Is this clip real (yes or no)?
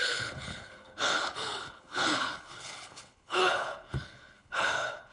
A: no